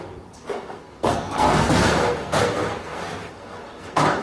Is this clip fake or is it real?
fake